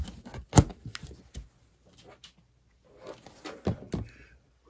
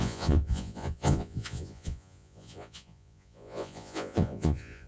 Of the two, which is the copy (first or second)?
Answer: second